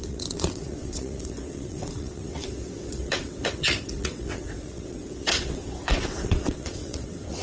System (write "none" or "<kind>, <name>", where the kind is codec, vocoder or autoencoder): vocoder, WaveNeXt